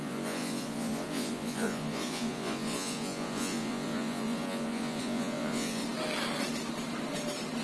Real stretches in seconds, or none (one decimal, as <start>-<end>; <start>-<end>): 5.8-7.6